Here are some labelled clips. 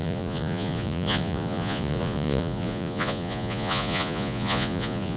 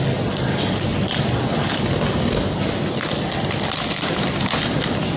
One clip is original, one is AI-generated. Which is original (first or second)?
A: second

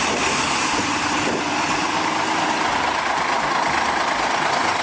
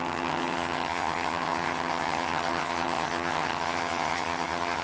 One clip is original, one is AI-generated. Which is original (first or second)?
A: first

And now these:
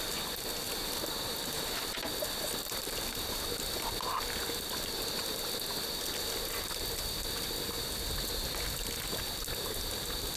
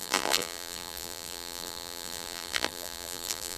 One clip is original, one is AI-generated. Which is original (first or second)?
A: first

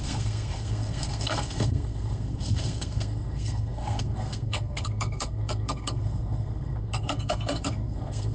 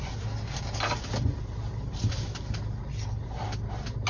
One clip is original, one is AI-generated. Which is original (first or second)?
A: second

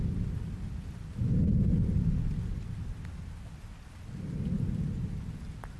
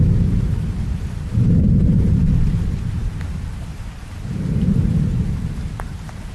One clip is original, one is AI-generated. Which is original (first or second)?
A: first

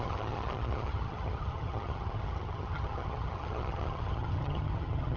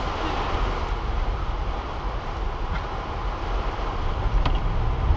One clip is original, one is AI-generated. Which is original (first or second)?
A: second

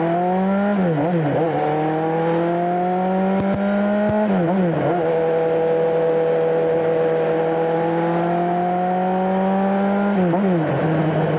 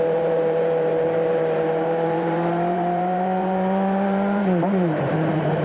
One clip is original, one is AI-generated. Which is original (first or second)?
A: first